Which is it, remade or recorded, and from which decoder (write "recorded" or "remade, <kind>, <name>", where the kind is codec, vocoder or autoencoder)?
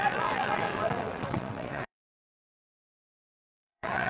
remade, vocoder, WaveNeXt